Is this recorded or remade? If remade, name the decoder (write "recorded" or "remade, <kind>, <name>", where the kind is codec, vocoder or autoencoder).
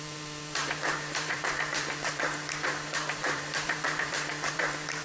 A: remade, vocoder, BigVGAN v2